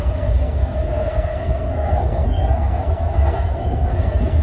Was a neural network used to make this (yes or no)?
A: yes